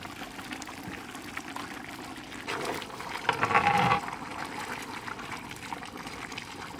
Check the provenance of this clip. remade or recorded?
recorded